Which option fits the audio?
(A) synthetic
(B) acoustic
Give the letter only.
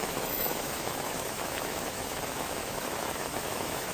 A